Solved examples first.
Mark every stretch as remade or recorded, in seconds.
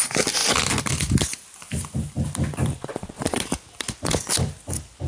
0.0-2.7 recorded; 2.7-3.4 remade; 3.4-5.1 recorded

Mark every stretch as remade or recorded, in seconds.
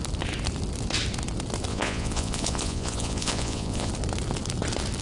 0.0-1.7 recorded; 1.7-3.9 remade; 3.9-5.0 recorded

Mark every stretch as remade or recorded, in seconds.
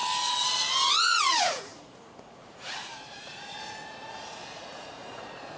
0.0-0.9 recorded; 0.9-5.6 remade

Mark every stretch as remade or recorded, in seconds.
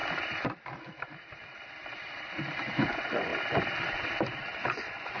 0.0-2.6 recorded; 2.6-3.3 remade; 3.3-4.7 recorded; 4.7-5.2 remade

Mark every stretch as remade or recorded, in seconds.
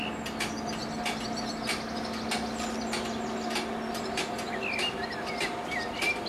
0.0-6.3 recorded